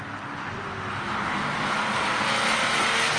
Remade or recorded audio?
recorded